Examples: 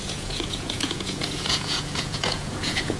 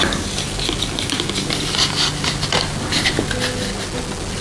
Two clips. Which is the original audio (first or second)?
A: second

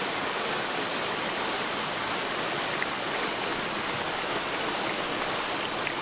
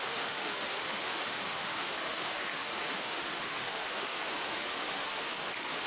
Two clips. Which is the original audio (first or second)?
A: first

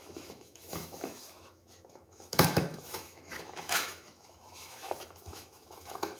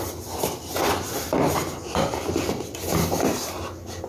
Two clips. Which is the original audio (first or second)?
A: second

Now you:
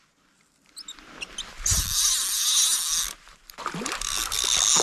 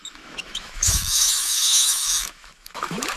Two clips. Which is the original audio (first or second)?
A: first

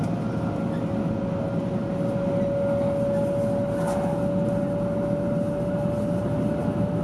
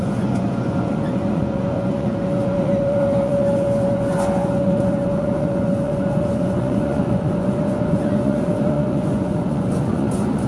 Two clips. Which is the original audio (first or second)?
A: first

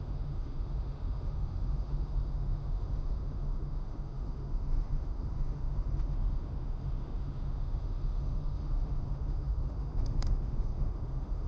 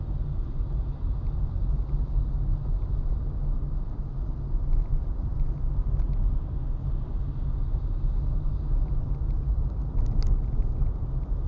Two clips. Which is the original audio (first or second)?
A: second